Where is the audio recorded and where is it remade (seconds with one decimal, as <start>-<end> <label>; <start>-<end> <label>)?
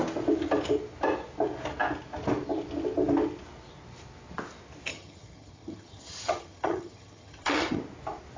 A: 0.0-4.9 recorded; 4.9-7.8 remade; 7.8-8.4 recorded